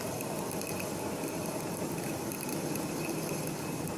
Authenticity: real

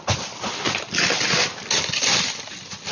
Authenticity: real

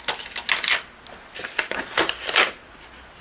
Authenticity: real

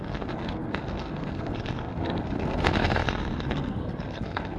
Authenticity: fake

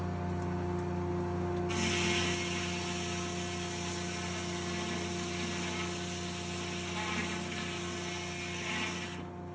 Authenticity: real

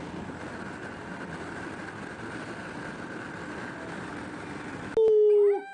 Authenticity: real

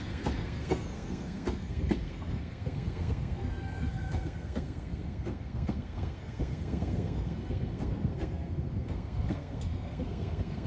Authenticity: fake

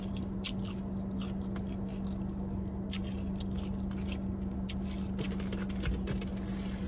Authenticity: real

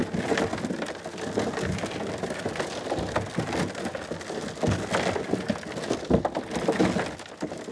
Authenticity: real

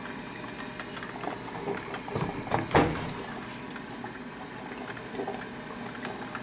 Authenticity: real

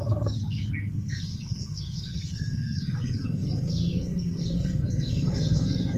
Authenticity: fake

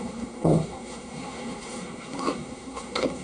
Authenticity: fake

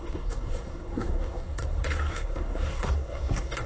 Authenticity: fake